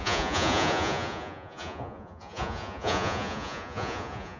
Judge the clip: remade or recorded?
remade